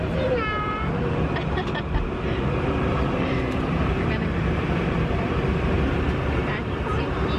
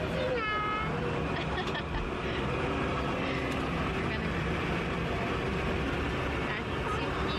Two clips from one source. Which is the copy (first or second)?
first